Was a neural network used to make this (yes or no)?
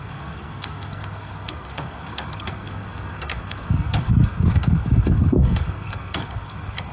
yes